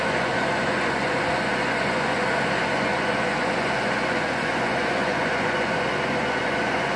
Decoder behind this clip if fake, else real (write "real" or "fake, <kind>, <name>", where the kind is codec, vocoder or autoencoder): fake, vocoder, Vocos